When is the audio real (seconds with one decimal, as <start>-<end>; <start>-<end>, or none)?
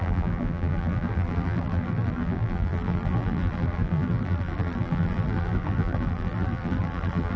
none